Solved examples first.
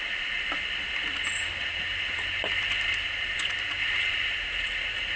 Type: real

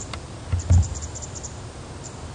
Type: real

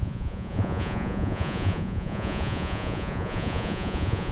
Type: fake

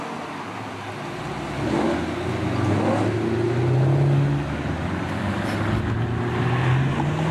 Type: real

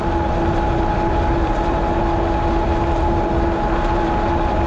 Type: real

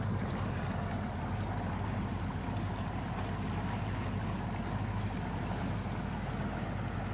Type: real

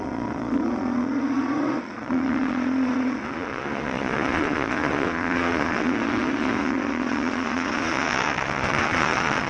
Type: fake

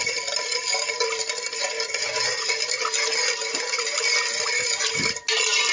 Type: real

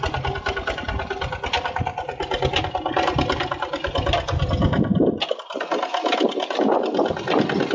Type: real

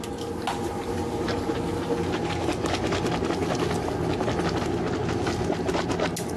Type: real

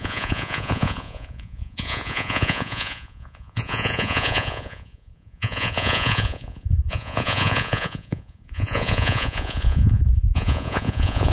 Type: fake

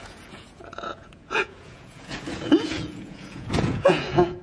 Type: fake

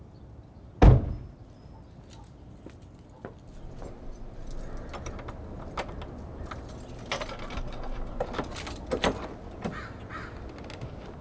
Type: real